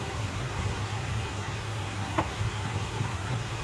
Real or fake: fake